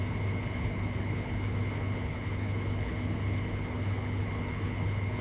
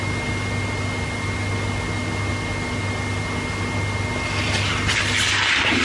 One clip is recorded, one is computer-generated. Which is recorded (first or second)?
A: second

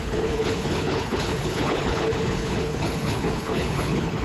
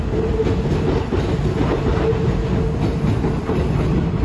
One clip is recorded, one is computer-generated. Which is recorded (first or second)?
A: second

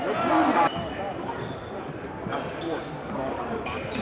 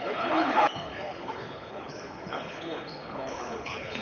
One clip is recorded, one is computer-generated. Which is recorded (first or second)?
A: first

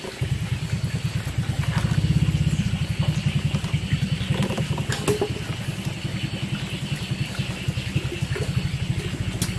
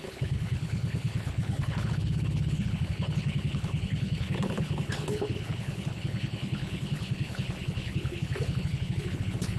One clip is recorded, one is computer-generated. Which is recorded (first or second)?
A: first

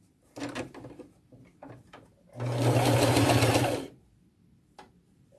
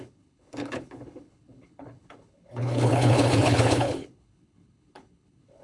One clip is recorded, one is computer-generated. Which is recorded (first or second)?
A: first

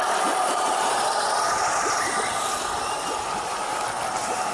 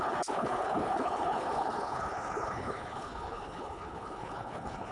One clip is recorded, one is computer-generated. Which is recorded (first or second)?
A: first